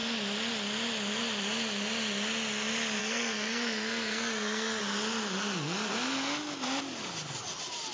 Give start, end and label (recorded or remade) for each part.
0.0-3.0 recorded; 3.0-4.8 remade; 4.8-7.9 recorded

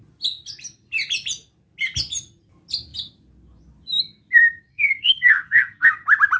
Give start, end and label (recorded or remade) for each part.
0.0-4.7 recorded; 4.7-5.9 remade; 5.9-6.4 recorded

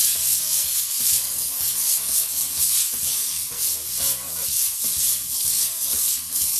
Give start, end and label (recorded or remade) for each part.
0.0-6.6 remade

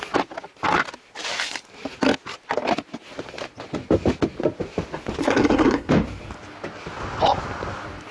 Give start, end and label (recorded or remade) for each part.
0.0-5.2 recorded; 5.2-5.9 remade; 5.9-8.1 recorded